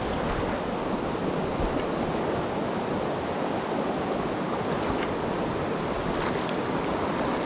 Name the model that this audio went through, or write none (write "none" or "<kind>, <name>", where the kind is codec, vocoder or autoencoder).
none